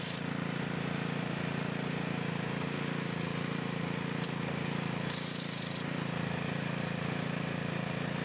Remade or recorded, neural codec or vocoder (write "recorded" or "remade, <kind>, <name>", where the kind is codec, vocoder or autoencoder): recorded